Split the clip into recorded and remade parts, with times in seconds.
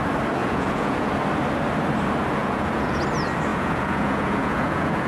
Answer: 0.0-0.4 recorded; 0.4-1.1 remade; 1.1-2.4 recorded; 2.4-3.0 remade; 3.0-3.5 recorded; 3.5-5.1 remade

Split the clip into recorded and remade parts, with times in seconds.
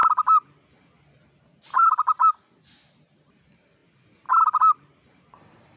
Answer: 0.0-1.3 recorded; 1.3-1.8 remade; 1.8-3.0 recorded; 3.0-3.8 remade; 3.8-4.6 recorded; 4.6-5.8 remade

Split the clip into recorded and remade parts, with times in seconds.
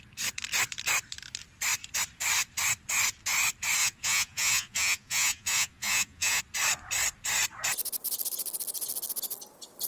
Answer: 0.0-3.8 recorded; 3.8-6.4 remade; 6.4-9.9 recorded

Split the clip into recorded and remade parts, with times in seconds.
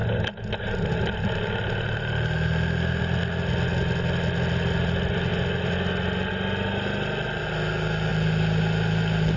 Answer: 0.0-9.4 recorded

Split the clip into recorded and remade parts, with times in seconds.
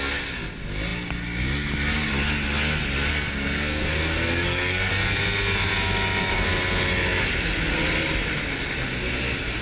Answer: 0.0-3.1 recorded; 3.1-4.9 remade; 4.9-9.6 recorded